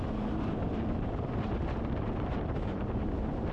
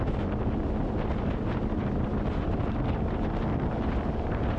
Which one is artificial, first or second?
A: first